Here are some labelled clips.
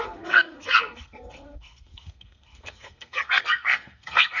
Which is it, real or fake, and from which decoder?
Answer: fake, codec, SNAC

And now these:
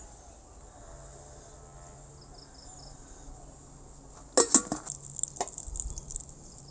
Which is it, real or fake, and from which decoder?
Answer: real